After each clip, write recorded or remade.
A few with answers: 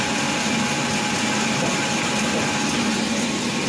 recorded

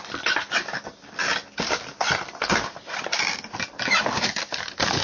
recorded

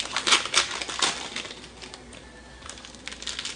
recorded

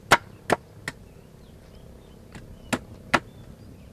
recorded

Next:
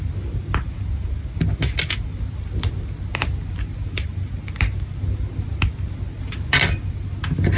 recorded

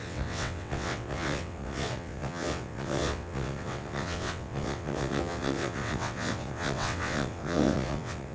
remade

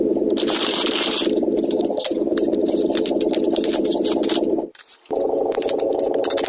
remade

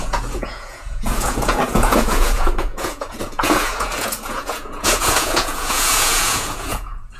remade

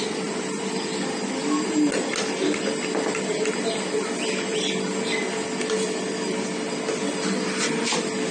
recorded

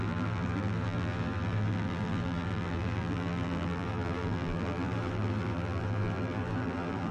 remade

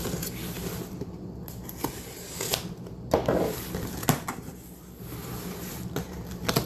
recorded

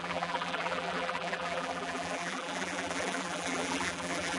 remade